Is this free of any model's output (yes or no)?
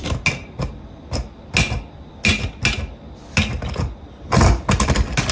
yes